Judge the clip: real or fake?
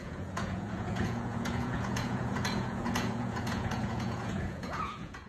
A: fake